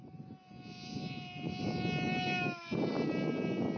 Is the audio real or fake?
real